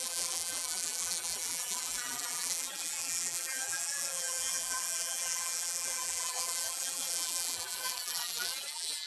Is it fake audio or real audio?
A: fake